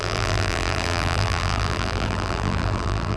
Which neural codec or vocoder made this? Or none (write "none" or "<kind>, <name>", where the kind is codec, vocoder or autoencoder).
vocoder, BigVGAN v2